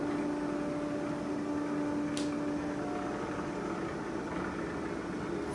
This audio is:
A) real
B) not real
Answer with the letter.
A